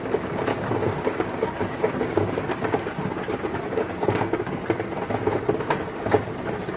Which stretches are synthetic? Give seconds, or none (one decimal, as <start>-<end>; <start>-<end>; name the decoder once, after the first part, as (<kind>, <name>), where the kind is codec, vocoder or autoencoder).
0.5-4.6 (codec, DAC)